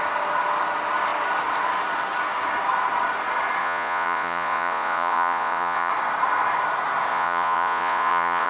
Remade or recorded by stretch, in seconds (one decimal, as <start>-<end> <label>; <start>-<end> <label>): 0.0-3.6 recorded; 3.6-5.9 remade; 5.9-7.1 recorded; 7.1-8.5 remade